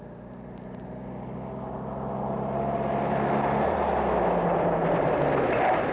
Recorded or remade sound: recorded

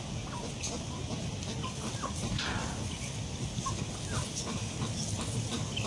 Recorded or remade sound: recorded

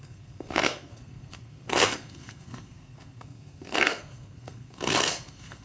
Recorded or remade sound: remade